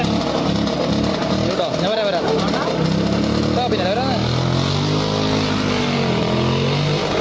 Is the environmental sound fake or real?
real